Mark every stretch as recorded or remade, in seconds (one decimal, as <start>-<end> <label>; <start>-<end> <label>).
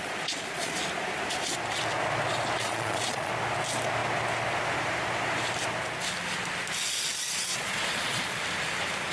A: 0.0-0.7 remade; 0.7-2.6 recorded; 2.6-3.3 remade; 3.3-7.5 recorded; 7.5-8.4 remade; 8.4-9.1 recorded